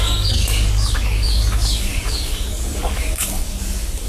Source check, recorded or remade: remade